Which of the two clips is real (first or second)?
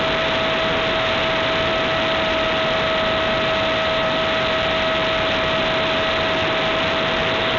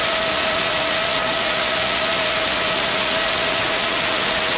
first